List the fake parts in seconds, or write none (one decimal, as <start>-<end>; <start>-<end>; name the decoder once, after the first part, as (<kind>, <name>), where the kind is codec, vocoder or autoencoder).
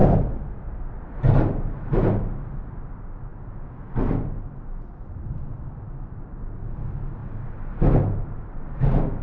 none